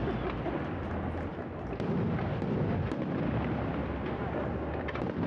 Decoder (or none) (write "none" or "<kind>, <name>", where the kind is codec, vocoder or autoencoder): none